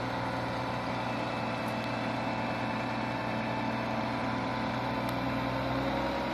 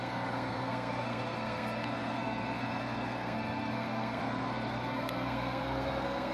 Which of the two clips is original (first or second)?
first